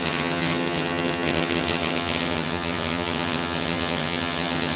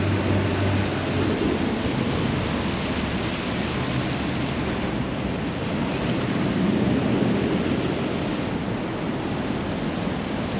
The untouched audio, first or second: second